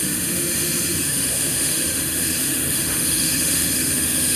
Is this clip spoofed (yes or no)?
yes